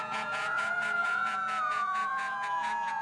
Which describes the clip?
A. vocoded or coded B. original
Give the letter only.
A